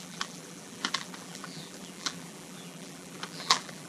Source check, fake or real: fake